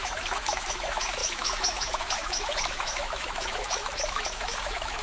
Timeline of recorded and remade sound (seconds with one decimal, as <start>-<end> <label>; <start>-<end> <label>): 0.0-5.0 remade